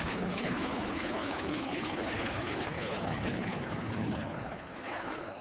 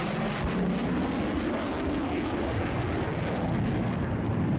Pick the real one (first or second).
second